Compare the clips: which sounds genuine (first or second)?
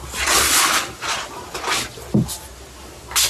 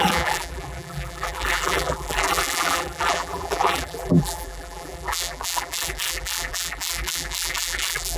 first